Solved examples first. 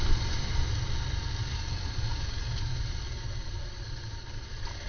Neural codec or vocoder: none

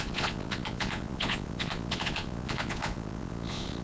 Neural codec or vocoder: vocoder, Vocos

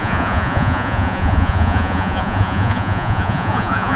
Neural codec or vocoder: vocoder, Vocos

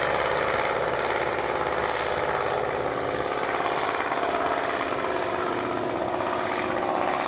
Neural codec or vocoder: none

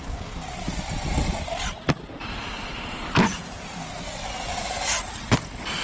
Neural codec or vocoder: none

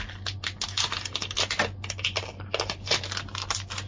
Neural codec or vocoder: none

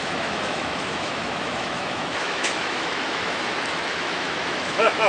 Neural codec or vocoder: autoencoder, DAC-VAE